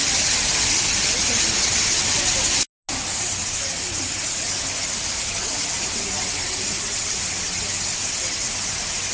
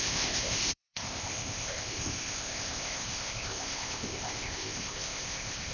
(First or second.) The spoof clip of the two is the second